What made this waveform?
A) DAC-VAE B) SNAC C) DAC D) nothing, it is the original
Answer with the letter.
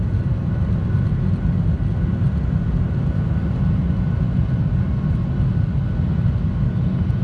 D